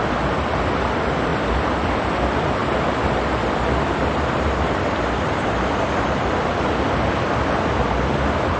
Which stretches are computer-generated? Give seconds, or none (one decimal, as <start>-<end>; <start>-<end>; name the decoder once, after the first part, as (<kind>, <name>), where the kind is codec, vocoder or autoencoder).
none

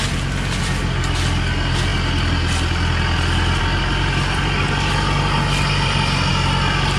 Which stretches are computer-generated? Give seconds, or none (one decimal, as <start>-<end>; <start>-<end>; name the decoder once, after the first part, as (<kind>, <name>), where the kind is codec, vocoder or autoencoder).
none

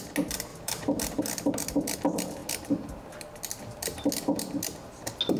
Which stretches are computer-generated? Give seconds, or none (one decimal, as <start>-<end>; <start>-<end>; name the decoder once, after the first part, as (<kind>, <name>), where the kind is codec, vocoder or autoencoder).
0.5-1.2 (vocoder, BigVGAN v2)